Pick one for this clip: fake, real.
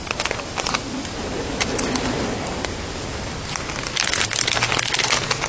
real